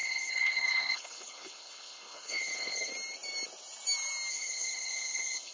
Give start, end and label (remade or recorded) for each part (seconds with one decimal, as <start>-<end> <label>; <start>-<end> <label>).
0.0-2.9 remade; 2.9-4.3 recorded; 4.3-5.5 remade